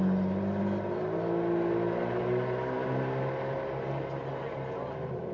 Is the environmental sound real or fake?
real